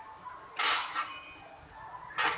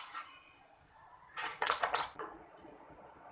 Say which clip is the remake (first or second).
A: second